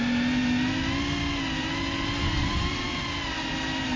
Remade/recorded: recorded